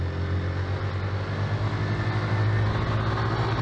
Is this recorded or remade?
recorded